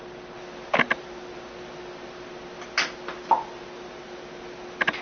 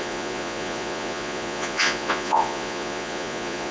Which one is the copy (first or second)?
second